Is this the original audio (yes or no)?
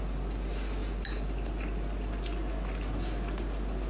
yes